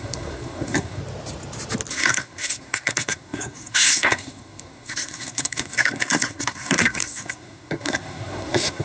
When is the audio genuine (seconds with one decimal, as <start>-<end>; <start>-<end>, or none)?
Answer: 1.0-1.9